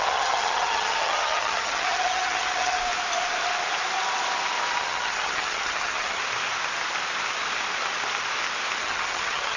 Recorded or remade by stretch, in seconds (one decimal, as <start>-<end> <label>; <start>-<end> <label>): 0.0-2.8 remade; 2.8-4.8 recorded; 4.8-6.2 remade; 6.2-8.8 recorded; 8.8-9.6 remade